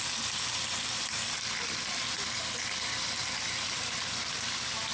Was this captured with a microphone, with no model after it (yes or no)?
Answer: yes